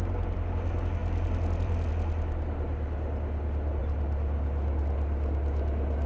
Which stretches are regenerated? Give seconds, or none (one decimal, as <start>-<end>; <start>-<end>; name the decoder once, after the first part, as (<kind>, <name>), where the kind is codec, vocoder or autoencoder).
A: 1.0-1.9 (vocoder, BigVGAN v2)